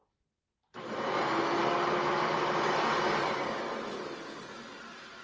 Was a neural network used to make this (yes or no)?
no